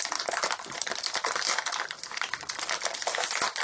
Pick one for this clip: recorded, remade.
recorded